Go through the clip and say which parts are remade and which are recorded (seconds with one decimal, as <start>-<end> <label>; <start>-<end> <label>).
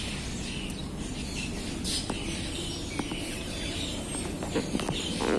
0.0-5.4 recorded